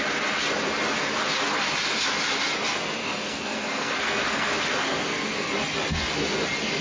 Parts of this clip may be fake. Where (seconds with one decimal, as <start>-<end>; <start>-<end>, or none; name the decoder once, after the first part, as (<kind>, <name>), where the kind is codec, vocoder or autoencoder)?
3.0-5.5 (codec, SNAC)